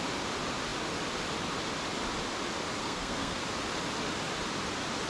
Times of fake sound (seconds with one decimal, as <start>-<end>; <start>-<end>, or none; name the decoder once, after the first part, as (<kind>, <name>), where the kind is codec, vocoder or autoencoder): 2.8-3.4 (codec, SNAC)